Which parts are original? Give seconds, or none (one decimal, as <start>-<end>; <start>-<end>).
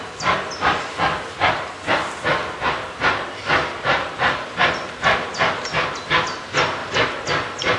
0.0-1.1; 1.9-2.4; 5.4-7.8